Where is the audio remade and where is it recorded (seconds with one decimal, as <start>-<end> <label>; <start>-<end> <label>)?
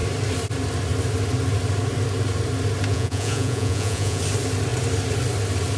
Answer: 0.0-2.9 recorded; 2.9-4.2 remade; 4.2-5.8 recorded